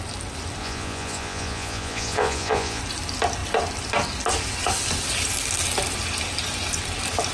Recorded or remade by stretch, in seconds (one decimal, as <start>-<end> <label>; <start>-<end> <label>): 0.0-0.6 recorded; 0.6-2.8 remade; 2.8-7.3 recorded